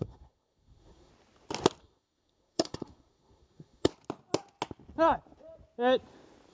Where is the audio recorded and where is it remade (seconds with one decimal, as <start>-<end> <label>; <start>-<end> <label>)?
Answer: 0.0-1.1 remade; 1.1-1.8 recorded; 1.8-3.9 remade; 3.9-6.5 recorded